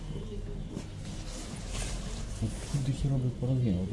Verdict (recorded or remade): recorded